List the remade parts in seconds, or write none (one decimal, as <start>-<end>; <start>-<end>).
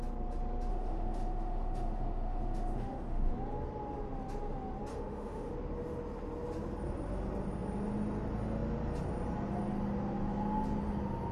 0.7-3.3; 4.9-5.5